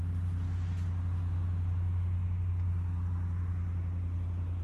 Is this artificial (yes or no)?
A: no